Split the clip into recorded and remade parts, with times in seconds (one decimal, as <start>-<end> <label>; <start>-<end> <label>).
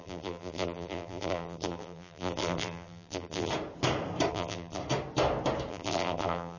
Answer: 0.0-3.5 remade; 3.5-4.3 recorded; 4.3-4.8 remade; 4.8-5.7 recorded; 5.7-6.6 remade